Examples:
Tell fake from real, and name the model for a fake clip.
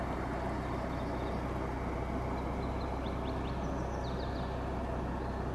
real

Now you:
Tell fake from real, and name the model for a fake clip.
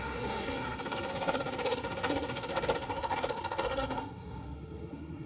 fake, codec, SNAC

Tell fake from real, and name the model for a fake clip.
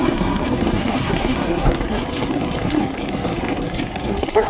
fake, codec, SNAC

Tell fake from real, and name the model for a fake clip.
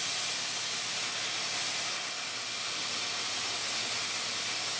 real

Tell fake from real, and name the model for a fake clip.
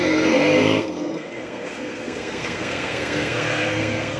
fake, codec, SNAC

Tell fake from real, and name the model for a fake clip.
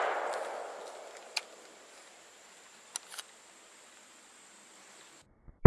real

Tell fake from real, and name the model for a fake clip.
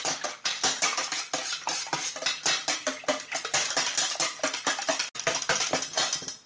real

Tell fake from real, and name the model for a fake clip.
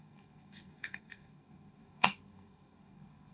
fake, codec, SNAC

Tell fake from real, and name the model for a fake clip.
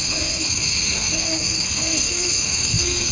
fake, codec, SNAC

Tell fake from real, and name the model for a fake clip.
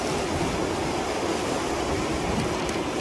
real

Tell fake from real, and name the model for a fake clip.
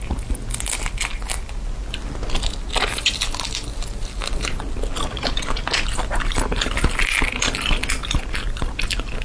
real